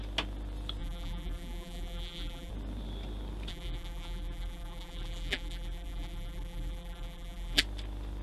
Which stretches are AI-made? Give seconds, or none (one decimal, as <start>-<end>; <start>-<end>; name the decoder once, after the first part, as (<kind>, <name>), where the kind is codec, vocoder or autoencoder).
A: 0.8-2.5 (vocoder, BigVGAN v2); 3.5-7.6